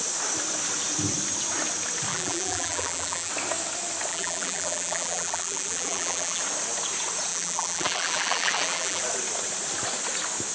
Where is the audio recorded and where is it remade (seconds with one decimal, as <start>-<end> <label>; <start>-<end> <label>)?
0.0-2.1 recorded; 2.1-3.3 remade; 3.3-4.1 recorded; 4.1-6.4 remade; 6.4-7.3 recorded; 7.3-9.0 remade; 9.0-10.5 recorded

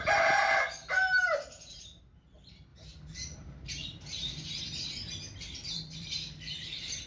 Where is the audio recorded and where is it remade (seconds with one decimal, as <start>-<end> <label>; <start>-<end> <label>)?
0.0-0.8 recorded; 0.8-2.0 remade; 2.0-2.7 recorded; 2.7-4.6 remade; 4.6-5.6 recorded; 5.6-7.1 remade

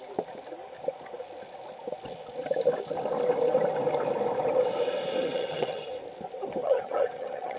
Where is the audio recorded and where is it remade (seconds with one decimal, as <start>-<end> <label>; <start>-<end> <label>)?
0.0-5.2 recorded; 5.2-5.9 remade; 5.9-6.6 recorded; 6.6-7.6 remade